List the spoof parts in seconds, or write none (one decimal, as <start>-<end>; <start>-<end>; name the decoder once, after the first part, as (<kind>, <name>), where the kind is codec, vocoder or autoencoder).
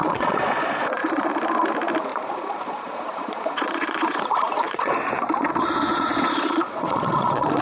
0.0-1.3 (vocoder, Vocos); 2.1-5.1; 5.9-7.6